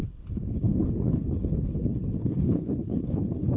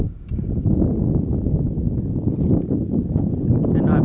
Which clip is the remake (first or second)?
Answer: first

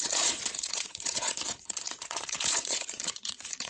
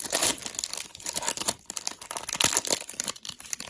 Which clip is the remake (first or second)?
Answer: first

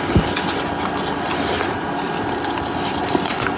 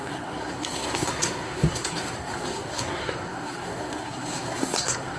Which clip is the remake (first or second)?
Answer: second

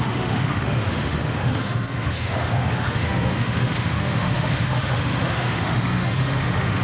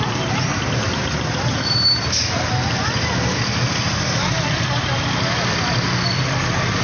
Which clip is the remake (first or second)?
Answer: first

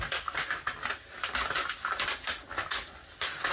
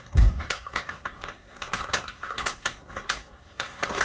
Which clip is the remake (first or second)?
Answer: second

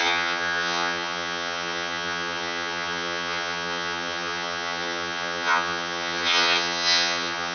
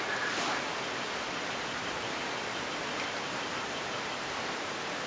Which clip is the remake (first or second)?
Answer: first